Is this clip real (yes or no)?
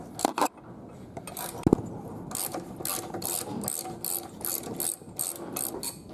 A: yes